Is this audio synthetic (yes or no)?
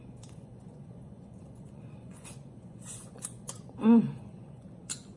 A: yes